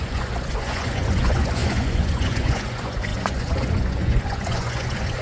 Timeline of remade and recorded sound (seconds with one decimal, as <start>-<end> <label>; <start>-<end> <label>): 0.0-5.2 remade